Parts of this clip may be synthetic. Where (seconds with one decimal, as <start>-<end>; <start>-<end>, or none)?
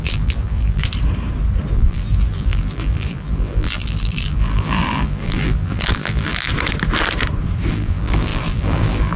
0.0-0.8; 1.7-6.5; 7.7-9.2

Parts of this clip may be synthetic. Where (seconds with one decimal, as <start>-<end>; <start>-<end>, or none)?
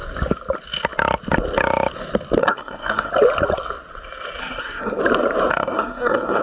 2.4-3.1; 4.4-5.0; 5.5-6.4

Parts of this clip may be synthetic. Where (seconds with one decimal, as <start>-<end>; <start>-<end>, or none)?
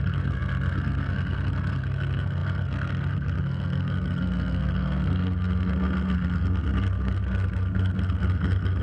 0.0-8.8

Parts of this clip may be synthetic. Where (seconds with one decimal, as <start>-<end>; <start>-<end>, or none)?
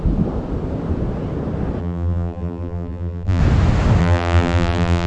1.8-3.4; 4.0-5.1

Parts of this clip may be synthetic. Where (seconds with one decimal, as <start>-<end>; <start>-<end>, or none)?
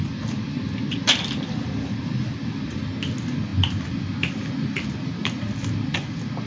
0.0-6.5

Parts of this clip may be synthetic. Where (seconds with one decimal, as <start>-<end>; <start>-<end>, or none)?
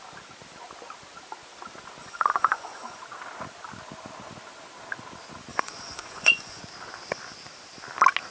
2.0-3.0; 5.5-6.6